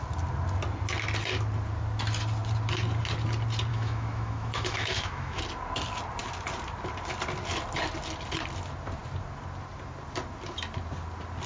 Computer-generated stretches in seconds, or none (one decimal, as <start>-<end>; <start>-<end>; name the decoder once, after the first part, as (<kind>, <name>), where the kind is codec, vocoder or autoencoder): 3.7-5.4 (autoencoder, DAC-VAE)